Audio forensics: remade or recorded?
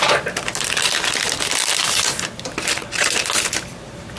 recorded